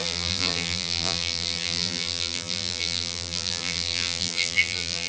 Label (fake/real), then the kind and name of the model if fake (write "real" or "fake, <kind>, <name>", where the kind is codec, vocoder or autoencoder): fake, vocoder, BigVGAN v2